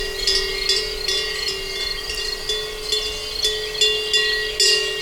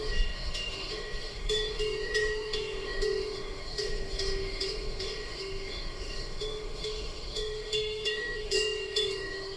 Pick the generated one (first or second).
second